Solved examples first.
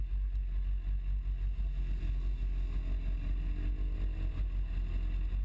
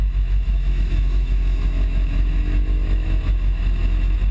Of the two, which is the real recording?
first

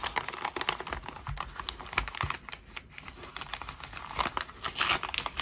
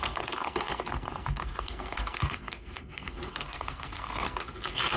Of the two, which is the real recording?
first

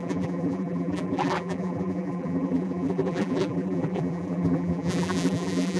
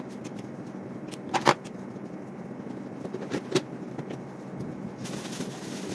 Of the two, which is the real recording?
second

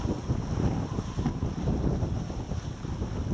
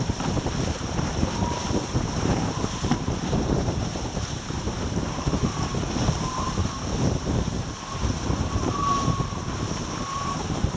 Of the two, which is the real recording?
first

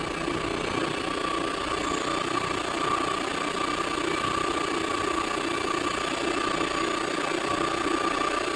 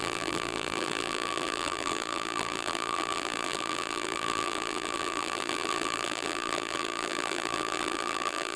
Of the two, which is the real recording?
first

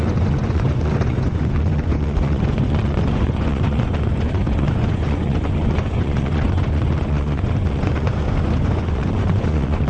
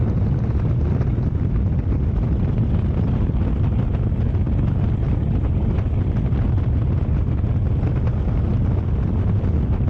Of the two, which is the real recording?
second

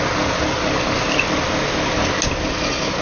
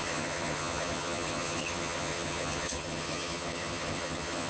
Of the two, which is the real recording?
first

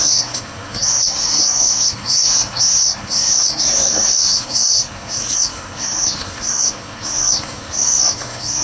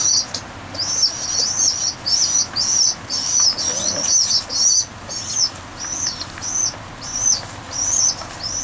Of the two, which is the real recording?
second